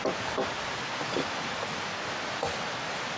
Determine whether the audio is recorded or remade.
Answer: recorded